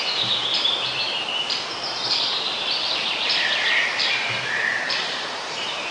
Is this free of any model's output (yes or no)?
no